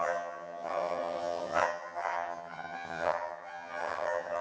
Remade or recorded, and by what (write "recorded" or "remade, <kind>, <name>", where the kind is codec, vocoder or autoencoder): remade, vocoder, HiFi-GAN